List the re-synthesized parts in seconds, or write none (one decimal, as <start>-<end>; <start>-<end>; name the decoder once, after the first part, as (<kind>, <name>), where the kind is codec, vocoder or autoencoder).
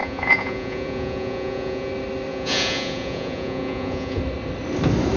0.0-1.9 (vocoder, Vocos); 2.3-4.2